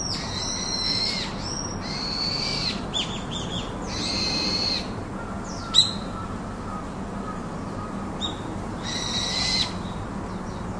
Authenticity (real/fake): real